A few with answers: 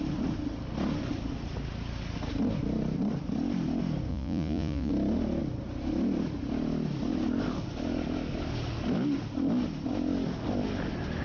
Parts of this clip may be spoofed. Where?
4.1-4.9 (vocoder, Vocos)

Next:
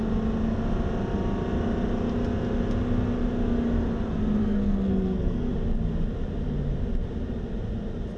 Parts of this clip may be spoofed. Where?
4.4-5.5 (codec, SNAC)

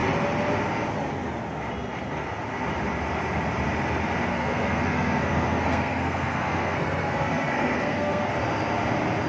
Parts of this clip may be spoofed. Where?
4.3-8.3 (codec, SNAC)

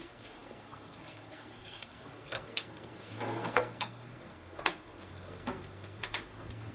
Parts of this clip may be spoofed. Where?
0.0-6.7 (codec, SNAC)

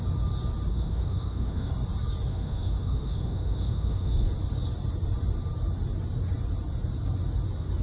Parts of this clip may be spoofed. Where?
0.7-1.7 (autoencoder, DAC-VAE); 2.3-4.3